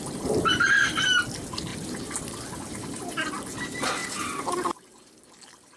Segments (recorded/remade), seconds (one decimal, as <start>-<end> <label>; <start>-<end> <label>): 0.0-5.8 recorded